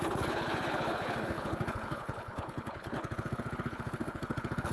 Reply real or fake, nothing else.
fake